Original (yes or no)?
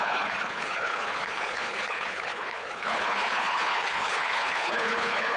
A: no